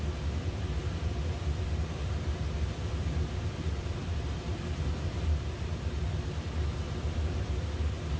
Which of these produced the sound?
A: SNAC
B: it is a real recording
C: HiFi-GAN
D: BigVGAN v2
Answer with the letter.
D